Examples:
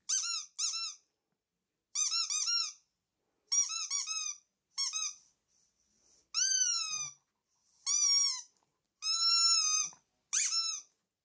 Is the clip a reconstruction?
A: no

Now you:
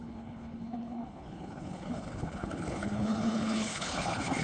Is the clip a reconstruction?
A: yes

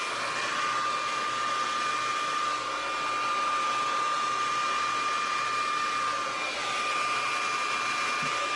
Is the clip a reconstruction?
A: no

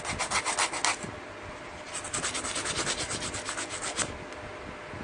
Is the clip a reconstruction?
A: no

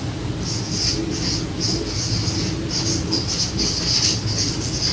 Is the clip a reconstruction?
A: no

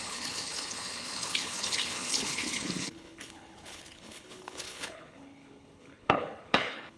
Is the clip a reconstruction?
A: yes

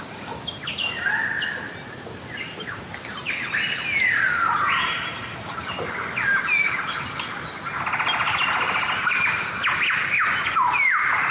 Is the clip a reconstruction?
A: no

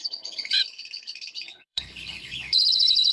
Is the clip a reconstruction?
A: yes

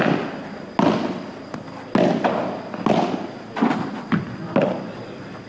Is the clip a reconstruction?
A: no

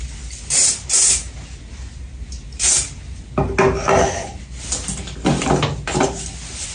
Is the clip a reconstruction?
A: no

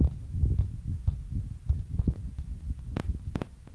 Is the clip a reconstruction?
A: no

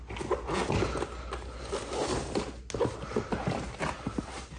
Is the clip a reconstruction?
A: no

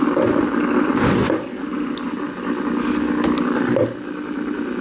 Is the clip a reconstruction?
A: no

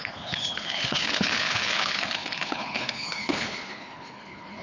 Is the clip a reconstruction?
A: yes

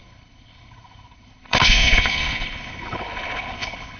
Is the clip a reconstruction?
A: yes